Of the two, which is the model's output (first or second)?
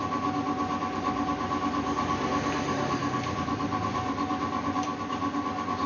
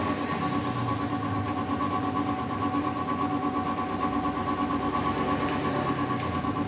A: first